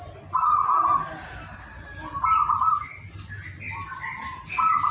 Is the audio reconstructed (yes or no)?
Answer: no